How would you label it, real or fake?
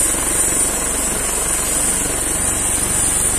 real